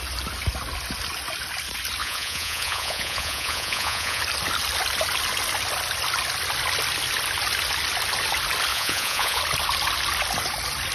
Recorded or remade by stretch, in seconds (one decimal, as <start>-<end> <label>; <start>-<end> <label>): 0.0-2.0 recorded; 2.0-4.2 remade; 4.2-8.7 recorded; 8.7-9.4 remade; 9.4-10.9 recorded